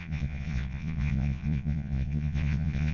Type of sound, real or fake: fake